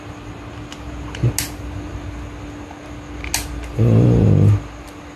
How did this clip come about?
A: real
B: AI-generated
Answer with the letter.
A